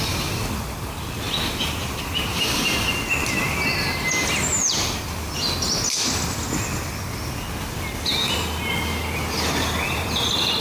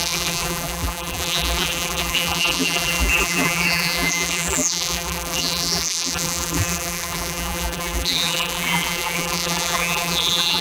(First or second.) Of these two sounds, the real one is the first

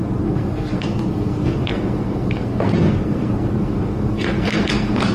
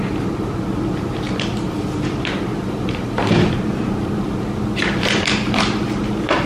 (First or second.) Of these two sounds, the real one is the second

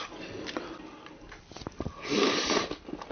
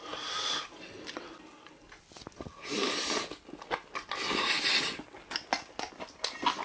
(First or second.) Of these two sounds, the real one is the second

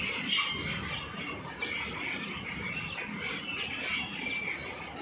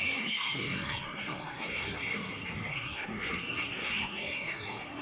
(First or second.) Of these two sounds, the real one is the first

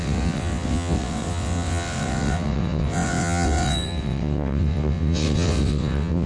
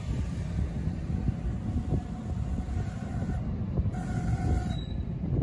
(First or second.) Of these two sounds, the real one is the second